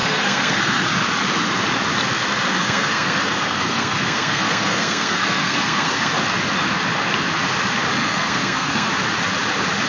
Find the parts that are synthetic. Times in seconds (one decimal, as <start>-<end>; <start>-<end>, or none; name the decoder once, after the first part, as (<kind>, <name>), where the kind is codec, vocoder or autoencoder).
0.0-0.8 (codec, SNAC); 2.6-6.1; 8.0-8.9